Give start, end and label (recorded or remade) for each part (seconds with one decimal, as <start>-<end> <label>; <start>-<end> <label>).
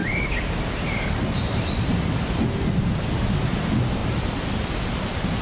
0.0-2.1 remade; 2.1-5.4 recorded